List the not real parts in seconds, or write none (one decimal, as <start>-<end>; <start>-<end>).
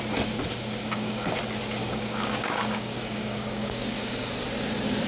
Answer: 0.8-1.4; 1.8-4.3